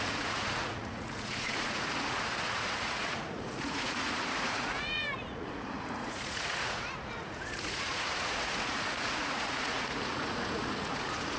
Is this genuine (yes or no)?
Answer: no